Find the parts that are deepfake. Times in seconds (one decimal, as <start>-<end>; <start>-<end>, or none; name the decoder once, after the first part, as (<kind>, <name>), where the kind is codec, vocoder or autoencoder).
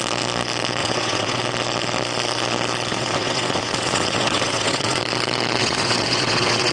0.8-1.4 (vocoder, WaveNeXt); 2.9-5.0; 5.6-6.7